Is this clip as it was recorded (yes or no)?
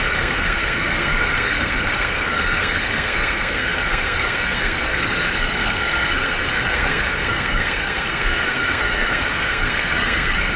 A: no